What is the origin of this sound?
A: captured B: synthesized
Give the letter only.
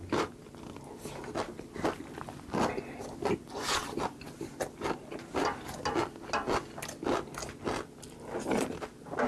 A